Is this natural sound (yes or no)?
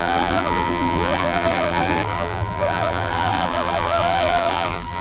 no